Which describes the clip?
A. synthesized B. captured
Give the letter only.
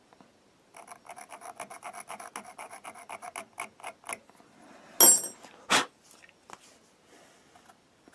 B